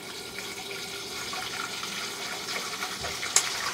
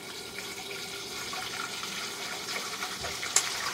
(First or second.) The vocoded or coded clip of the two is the second